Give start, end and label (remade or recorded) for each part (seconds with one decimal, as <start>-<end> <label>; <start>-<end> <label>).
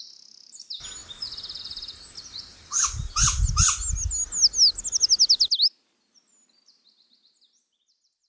0.0-8.3 recorded